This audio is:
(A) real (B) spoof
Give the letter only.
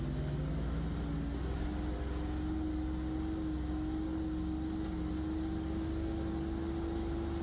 A